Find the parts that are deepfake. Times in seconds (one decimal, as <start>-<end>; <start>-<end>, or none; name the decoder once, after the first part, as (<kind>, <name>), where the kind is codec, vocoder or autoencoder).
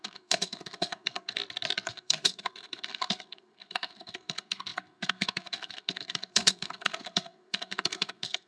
0.0-1.4 (codec, SNAC); 1.9-8.5